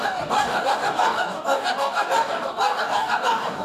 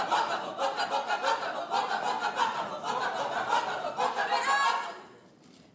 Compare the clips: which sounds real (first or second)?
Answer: second